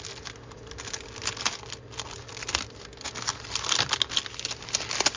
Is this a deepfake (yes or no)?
no